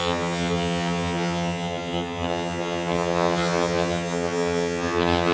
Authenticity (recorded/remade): remade